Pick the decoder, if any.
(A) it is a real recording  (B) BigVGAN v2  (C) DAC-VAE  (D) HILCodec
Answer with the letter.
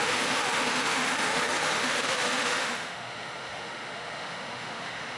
C